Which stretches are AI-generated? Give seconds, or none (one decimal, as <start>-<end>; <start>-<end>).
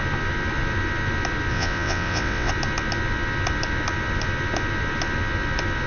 1.5-2.5